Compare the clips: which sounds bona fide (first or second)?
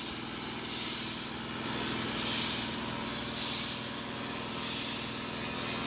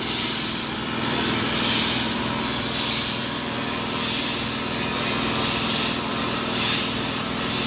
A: first